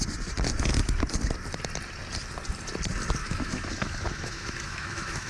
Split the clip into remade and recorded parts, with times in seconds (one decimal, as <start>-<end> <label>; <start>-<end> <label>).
0.0-3.2 recorded; 3.2-5.3 remade